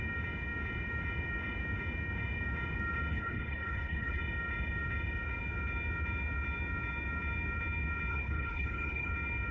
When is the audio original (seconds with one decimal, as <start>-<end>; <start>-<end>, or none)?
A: 0.0-3.1; 4.2-8.1; 9.1-9.5